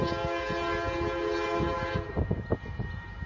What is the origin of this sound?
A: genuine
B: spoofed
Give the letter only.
A